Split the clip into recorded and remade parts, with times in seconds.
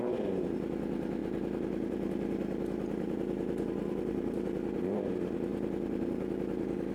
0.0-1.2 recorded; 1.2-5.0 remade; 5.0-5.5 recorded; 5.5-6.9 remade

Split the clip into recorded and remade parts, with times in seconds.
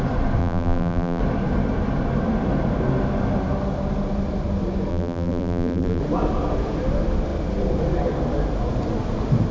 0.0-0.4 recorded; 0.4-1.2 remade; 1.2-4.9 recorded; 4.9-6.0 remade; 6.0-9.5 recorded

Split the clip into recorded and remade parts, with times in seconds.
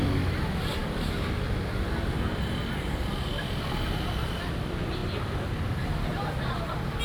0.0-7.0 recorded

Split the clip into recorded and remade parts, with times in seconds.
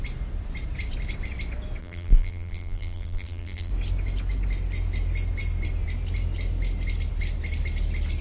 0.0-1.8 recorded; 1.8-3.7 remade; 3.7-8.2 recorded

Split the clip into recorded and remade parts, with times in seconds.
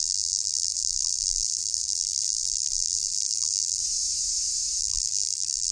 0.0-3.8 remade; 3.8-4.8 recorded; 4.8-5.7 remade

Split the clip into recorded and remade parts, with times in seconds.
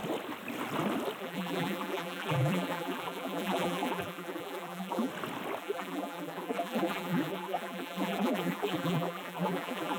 0.0-1.2 recorded; 1.2-5.1 remade; 5.1-5.6 recorded; 5.6-10.0 remade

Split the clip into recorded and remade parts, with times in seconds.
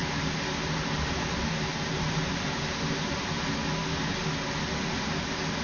0.0-3.4 remade; 3.4-5.6 recorded